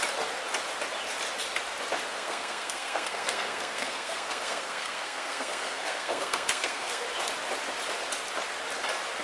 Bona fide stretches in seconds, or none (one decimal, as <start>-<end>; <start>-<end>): 0.0-2.1; 7.0-9.2